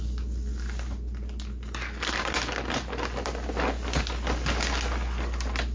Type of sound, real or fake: real